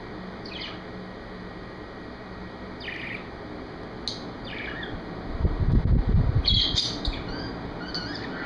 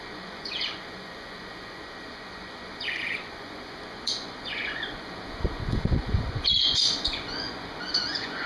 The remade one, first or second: second